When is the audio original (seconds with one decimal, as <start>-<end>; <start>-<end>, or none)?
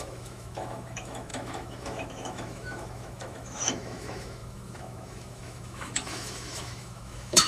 none